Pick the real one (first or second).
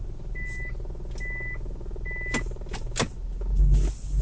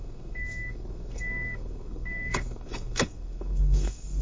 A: first